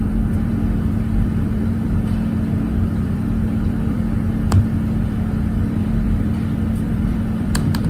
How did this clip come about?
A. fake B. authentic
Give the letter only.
A